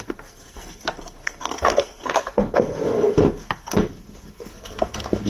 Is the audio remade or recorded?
remade